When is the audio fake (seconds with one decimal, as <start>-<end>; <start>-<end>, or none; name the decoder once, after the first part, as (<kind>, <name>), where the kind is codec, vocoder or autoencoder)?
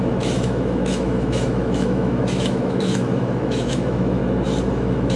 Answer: 0.0-4.2 (autoencoder, DAC-VAE); 4.7-5.2